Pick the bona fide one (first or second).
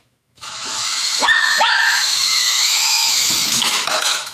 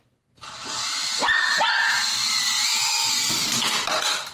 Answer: second